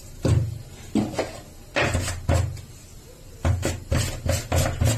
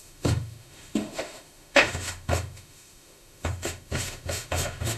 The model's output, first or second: second